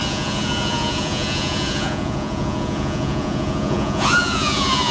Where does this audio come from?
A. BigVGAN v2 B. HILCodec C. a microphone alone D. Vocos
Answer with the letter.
D